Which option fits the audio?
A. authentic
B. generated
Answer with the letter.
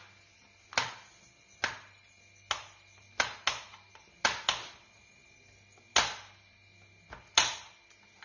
A